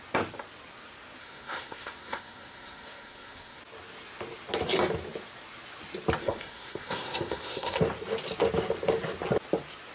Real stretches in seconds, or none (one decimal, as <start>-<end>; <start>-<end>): 0.0-1.2; 3.6-6.2; 7.8-9.9